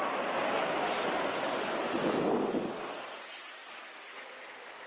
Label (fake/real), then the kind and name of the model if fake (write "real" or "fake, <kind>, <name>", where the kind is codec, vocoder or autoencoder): real